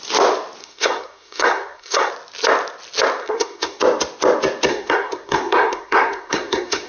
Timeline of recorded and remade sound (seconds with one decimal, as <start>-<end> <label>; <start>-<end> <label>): 0.0-0.6 recorded; 0.6-2.1 remade; 2.1-3.2 recorded; 3.2-3.8 remade; 3.8-4.7 recorded; 4.7-6.9 remade